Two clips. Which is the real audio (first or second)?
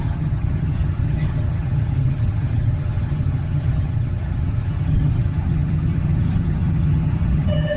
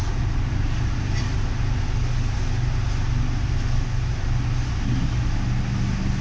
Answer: second